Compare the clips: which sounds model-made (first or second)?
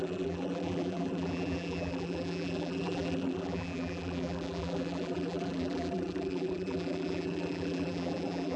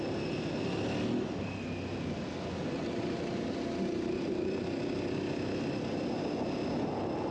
first